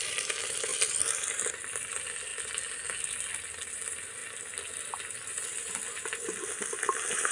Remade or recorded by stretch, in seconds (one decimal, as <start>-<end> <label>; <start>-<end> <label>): 0.0-2.3 remade; 2.3-3.7 recorded; 3.7-4.2 remade; 4.2-6.0 recorded; 6.0-7.3 remade